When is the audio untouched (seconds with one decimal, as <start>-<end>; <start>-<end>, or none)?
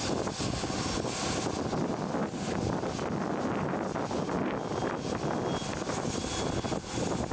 0.0-7.3